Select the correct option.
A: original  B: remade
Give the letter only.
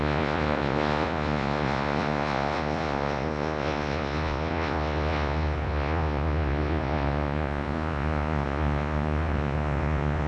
B